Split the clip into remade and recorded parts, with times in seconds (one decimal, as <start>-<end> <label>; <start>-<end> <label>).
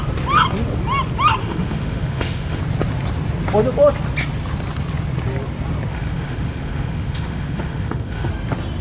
0.0-1.4 recorded; 1.4-2.6 remade; 2.6-5.9 recorded; 5.9-8.3 remade; 8.3-8.8 recorded